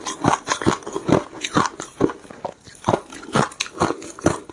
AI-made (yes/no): no